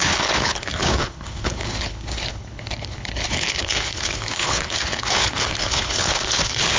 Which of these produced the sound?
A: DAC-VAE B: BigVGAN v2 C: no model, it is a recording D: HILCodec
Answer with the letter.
D